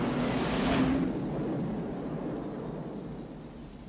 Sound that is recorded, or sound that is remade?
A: recorded